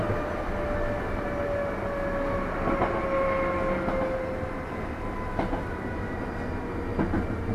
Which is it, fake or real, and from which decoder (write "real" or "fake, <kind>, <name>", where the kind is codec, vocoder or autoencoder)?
real